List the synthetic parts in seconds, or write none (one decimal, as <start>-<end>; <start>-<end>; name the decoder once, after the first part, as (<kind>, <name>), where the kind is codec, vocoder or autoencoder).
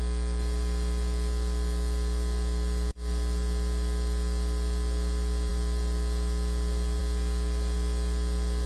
none